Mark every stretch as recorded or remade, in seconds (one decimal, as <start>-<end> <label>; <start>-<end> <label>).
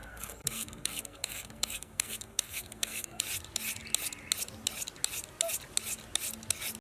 0.0-3.2 remade; 3.2-6.8 recorded